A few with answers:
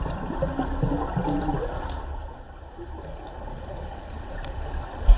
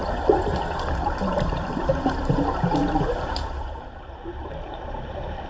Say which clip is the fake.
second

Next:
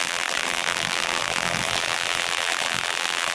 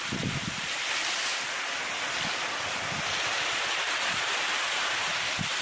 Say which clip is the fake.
first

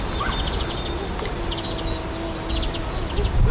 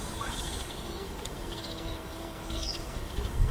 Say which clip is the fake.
second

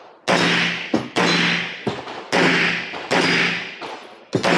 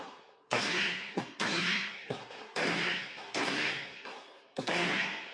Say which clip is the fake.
second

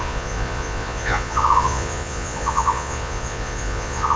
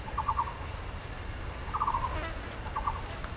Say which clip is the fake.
first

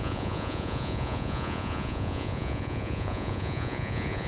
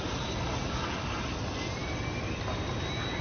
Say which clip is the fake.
first